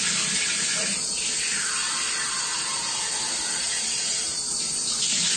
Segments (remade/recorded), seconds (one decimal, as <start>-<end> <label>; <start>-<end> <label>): 0.0-2.5 recorded; 2.5-3.1 remade; 3.1-3.6 recorded; 3.6-4.7 remade; 4.7-5.4 recorded